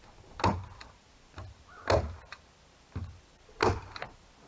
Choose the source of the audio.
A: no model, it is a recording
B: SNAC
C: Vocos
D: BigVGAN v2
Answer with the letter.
A